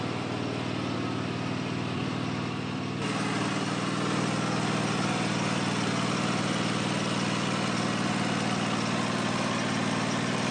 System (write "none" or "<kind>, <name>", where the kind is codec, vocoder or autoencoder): none